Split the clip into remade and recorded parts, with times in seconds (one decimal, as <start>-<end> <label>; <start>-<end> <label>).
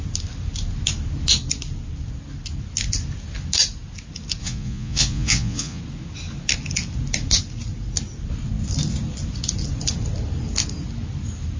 0.0-4.4 recorded; 4.4-5.8 remade; 5.8-11.6 recorded